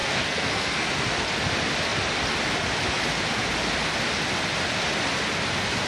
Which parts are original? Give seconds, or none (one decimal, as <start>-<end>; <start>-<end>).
0.9-5.9